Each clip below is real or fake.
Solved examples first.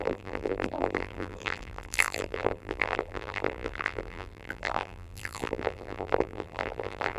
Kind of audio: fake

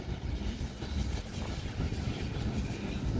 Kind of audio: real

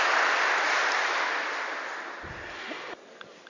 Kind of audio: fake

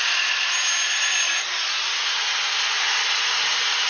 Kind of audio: real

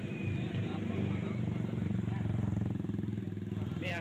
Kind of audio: fake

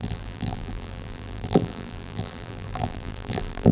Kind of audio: fake